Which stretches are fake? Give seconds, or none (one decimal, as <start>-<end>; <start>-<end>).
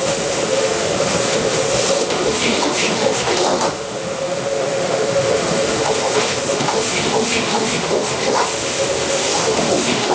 0.0-10.1